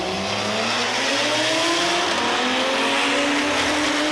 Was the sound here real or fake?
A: real